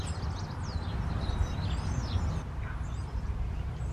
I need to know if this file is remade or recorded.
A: recorded